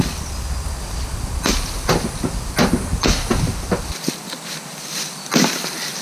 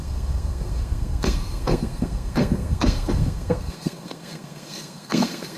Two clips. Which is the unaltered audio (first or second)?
first